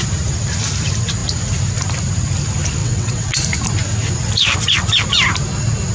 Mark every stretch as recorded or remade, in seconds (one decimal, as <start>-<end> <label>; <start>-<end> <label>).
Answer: 0.0-2.8 recorded; 2.8-3.4 remade; 3.4-5.9 recorded